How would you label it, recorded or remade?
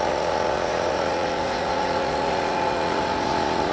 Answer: remade